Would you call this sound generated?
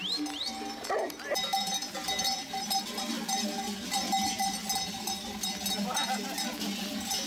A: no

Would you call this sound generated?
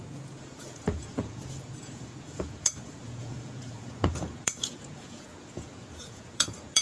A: yes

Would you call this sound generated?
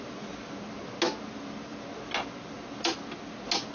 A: no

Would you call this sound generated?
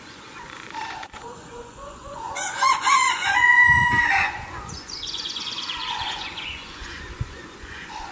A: yes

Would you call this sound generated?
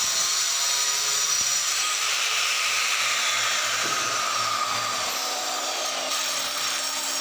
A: yes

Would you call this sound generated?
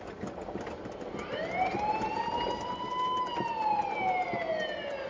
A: no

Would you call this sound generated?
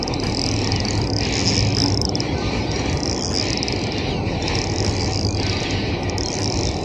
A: no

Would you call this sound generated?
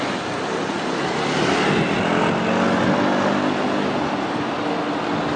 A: no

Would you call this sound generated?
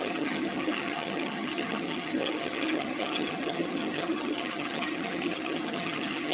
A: yes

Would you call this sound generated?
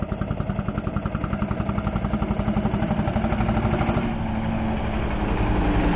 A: no